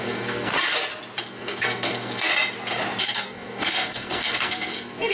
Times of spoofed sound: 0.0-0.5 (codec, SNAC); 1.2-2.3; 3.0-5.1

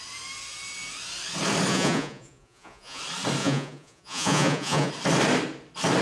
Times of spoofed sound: 1.7-3.0 (vocoder, Vocos); 3.4-4.9

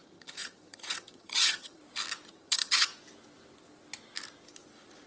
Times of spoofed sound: 0.0-1.8 (vocoder, HiFi-GAN); 2.3-2.9

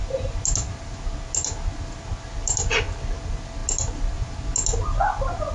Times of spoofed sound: none

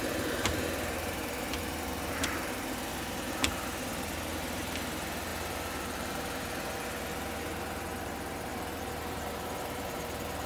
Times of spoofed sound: 0.0-3.9 (vocoder, BigVGAN v2); 4.6-10.5